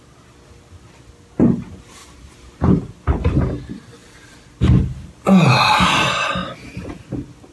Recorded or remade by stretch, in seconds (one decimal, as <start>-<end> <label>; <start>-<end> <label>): 0.0-7.5 recorded